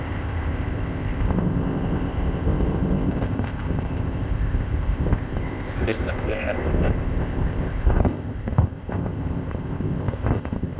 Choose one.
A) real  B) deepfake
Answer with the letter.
B